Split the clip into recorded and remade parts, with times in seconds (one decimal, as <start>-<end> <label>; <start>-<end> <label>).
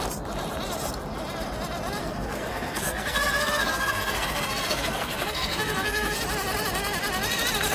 0.0-2.0 recorded; 2.0-6.2 remade; 6.2-7.7 recorded